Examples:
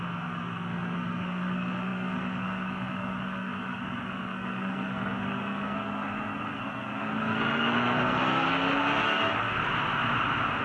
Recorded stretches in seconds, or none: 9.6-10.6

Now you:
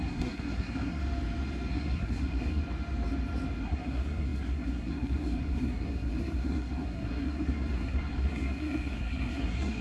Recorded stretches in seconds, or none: 1.0-1.7; 2.6-3.6

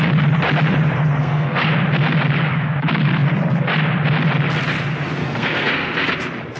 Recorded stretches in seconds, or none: 0.0-1.2; 1.7-5.2; 6.1-6.6

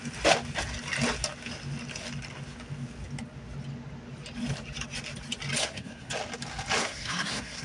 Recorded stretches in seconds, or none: 0.0-5.6; 6.1-6.8

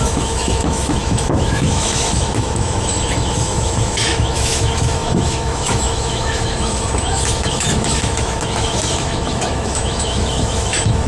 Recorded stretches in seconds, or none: none

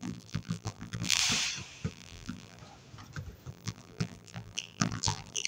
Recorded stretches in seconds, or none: 1.2-1.9; 2.6-3.5

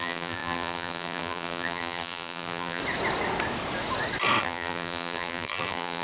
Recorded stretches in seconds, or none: 2.8-4.4

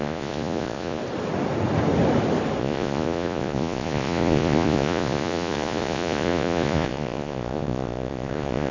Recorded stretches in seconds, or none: 1.0-2.6